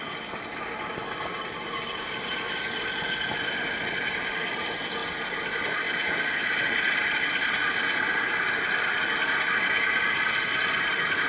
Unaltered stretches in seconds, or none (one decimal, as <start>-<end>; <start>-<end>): 0.0-11.3